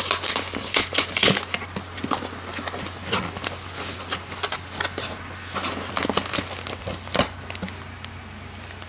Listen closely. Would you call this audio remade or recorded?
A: recorded